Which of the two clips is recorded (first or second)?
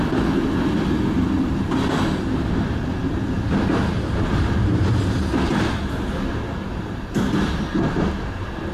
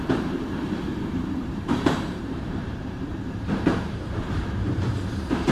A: first